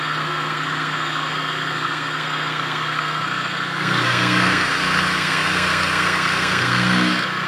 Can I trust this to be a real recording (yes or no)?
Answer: no